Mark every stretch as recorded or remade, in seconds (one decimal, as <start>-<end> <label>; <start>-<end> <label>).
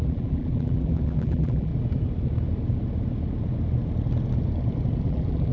0.0-1.7 remade; 1.7-5.0 recorded; 5.0-5.5 remade